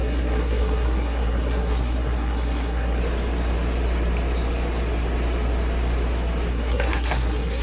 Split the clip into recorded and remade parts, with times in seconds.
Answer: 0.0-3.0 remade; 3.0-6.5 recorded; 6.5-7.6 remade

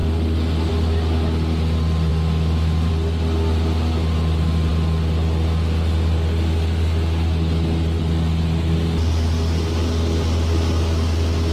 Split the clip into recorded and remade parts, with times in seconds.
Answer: 0.0-2.1 recorded; 2.1-2.9 remade; 2.9-11.5 recorded

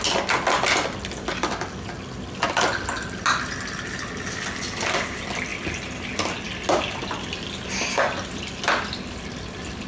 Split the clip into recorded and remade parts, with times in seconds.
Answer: 0.0-9.9 recorded

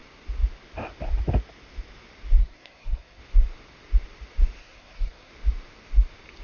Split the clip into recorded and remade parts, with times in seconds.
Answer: 0.0-2.4 recorded; 2.4-3.2 remade; 3.2-4.6 recorded; 4.6-5.3 remade; 5.3-6.4 recorded

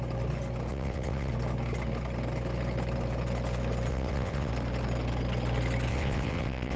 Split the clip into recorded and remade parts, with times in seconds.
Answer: 0.0-0.7 recorded; 0.7-1.3 remade; 1.3-3.9 recorded; 3.9-4.5 remade; 4.5-5.9 recorded; 5.9-6.8 remade

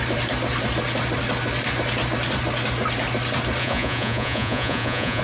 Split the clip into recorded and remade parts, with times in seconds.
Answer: 0.0-3.6 recorded; 3.6-5.2 remade

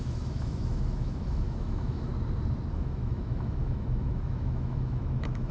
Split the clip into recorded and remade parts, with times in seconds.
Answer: 0.0-2.1 remade; 2.1-2.7 recorded; 2.7-5.5 remade

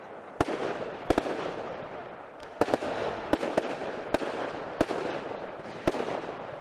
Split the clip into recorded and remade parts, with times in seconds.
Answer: 0.0-2.4 recorded; 2.4-3.3 remade; 3.3-6.6 recorded